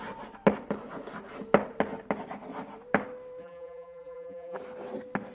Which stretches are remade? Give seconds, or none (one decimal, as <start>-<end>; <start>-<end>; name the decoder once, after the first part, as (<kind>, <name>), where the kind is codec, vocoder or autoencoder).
3.4-4.6 (vocoder, BigVGAN v2)